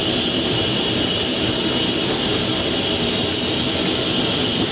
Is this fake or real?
real